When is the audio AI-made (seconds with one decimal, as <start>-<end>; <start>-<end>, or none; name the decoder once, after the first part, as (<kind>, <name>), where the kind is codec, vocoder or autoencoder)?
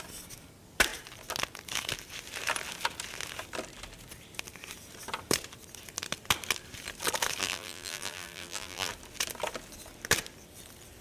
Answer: 7.4-8.9 (vocoder, BigVGAN v2)